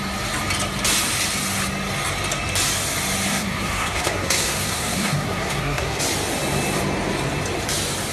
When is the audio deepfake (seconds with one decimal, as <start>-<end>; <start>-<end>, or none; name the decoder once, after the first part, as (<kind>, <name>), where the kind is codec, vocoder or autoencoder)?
3.3-6.0 (codec, SNAC)